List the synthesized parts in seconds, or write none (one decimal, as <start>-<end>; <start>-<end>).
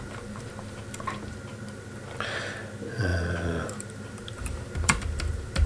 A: 3.1-5.7